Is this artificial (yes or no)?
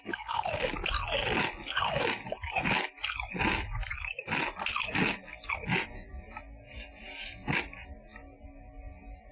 no